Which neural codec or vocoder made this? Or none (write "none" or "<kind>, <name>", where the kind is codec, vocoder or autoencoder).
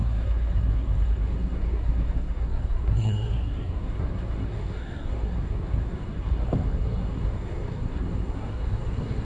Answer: codec, SNAC